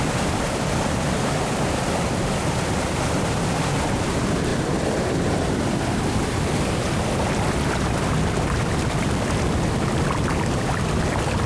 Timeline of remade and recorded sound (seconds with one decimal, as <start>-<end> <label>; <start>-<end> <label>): 0.0-11.5 remade